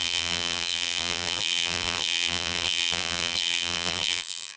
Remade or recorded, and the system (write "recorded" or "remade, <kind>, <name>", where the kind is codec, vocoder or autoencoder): remade, vocoder, BigVGAN v2